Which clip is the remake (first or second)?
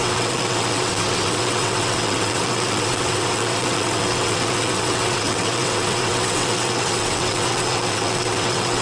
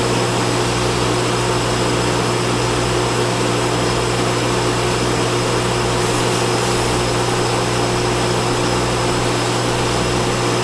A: first